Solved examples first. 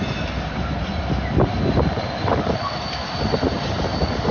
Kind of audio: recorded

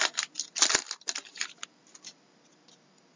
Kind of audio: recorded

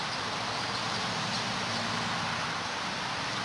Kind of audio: recorded